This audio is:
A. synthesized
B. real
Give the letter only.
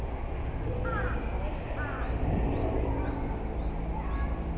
B